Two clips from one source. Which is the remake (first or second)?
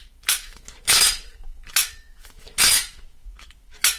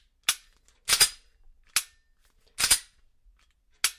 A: first